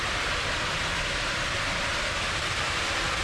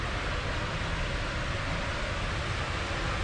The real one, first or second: second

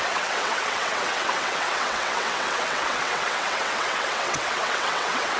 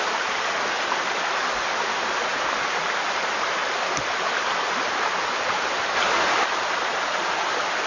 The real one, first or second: second